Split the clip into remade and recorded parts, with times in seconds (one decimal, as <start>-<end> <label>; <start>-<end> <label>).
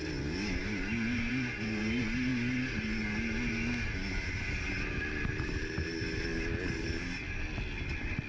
0.0-8.3 recorded